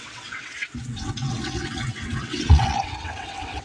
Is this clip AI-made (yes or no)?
yes